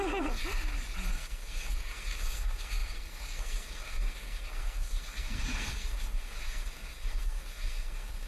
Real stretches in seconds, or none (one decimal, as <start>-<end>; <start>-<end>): 0.4-1.1